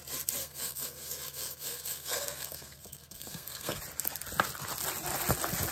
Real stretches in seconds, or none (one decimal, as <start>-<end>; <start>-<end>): 0.0-0.4; 3.8-5.7